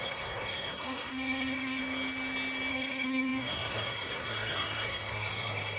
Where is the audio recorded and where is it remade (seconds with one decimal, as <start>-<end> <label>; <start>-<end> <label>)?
0.0-1.8 remade; 1.8-2.7 recorded; 2.7-5.8 remade